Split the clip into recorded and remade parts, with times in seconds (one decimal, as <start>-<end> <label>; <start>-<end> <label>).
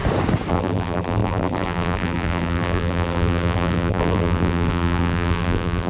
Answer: 0.0-0.5 recorded; 0.5-5.9 remade